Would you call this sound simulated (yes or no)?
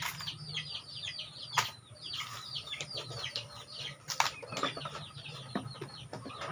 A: no